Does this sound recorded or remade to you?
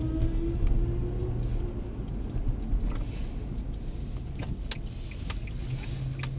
recorded